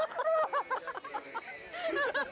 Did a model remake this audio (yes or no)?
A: no